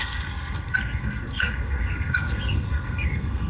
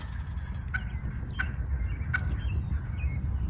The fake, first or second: first